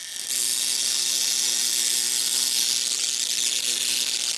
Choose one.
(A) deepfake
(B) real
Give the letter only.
B